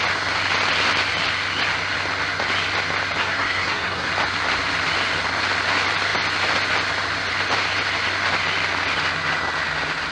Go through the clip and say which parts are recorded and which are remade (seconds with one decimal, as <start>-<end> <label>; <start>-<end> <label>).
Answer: 0.0-3.2 recorded; 3.2-4.1 remade; 4.1-10.1 recorded